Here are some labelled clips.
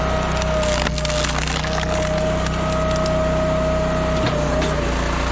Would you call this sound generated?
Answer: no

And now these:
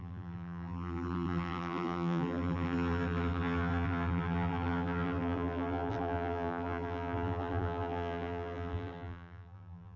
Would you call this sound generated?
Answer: yes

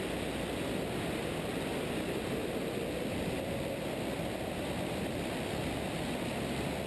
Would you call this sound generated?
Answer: no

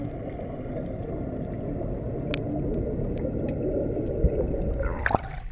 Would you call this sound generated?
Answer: no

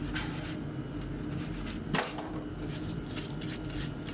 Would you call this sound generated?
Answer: no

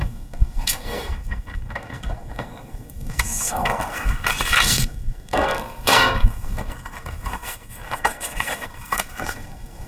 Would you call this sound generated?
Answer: yes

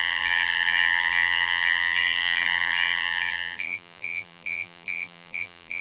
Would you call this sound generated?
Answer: yes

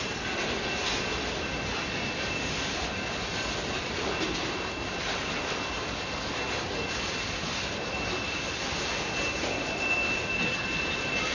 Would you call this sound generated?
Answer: no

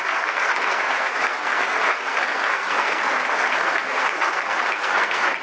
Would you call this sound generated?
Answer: yes